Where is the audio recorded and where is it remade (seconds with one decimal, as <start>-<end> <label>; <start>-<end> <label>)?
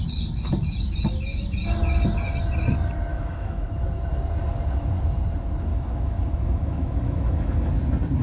0.0-3.1 recorded; 3.1-3.7 remade; 3.7-5.7 recorded; 5.7-7.7 remade; 7.7-8.2 recorded